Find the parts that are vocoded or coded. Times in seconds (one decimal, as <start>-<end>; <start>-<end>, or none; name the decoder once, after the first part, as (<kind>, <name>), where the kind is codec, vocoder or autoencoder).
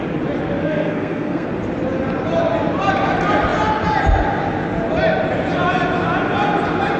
0.6-1.5 (codec, SNAC)